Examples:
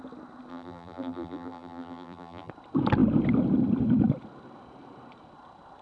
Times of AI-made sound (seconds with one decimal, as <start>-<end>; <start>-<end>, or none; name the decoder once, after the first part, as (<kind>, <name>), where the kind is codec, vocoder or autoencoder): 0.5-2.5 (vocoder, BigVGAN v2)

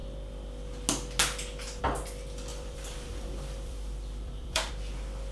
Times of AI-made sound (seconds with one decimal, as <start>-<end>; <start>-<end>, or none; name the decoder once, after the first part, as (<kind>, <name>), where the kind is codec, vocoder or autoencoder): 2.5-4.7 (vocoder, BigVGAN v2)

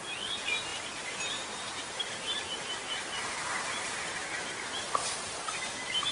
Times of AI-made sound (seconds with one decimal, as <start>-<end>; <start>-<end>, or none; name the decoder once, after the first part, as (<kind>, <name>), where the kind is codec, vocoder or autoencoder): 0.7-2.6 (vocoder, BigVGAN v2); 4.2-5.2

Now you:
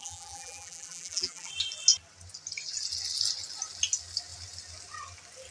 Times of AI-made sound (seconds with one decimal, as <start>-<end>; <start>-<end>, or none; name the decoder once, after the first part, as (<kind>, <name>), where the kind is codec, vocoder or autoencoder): 0.0-1.5 (vocoder, BigVGAN v2)

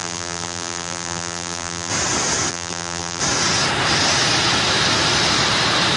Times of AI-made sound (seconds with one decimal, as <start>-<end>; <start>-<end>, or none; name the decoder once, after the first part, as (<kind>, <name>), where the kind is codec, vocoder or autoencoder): 0.0-1.9 (vocoder, BigVGAN v2); 2.5-3.2

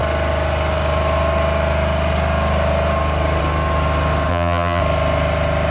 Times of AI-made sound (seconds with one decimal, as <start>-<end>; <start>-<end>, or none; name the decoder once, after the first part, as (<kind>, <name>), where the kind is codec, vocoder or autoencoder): 4.3-4.8 (vocoder, BigVGAN v2)